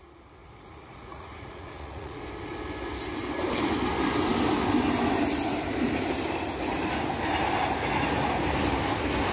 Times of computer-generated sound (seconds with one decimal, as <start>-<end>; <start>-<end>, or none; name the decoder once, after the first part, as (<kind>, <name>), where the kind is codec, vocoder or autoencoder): 0.4-2.2 (vocoder, Vocos)